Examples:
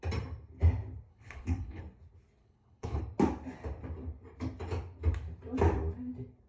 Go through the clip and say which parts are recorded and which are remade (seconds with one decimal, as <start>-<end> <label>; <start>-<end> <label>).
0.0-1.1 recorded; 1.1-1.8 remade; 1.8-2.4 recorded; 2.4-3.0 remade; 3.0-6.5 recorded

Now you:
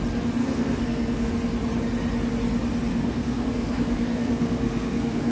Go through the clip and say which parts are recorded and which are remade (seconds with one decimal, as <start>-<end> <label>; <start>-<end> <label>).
0.0-0.4 recorded; 0.4-1.3 remade; 1.3-2.9 recorded; 2.9-5.3 remade

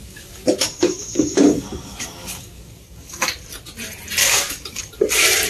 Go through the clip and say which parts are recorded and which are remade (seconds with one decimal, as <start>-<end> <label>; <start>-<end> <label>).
0.0-3.3 remade; 3.3-4.2 recorded; 4.2-4.8 remade; 4.8-5.5 recorded

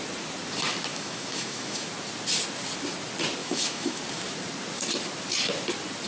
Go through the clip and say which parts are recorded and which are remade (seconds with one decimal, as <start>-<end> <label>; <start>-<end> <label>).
0.0-0.9 recorded; 0.9-1.9 remade; 1.9-3.4 recorded; 3.4-4.0 remade; 4.0-6.1 recorded